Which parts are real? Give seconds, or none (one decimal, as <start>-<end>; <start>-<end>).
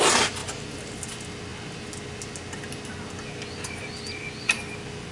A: 0.0-5.1